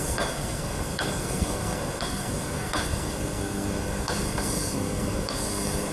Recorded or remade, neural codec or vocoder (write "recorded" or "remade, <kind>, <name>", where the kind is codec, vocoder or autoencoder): remade, codec, SNAC